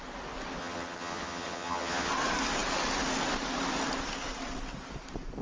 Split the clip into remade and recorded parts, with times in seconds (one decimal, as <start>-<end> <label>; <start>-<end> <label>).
0.0-0.6 recorded; 0.6-2.1 remade; 2.1-5.4 recorded